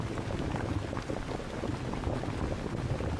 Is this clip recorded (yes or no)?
yes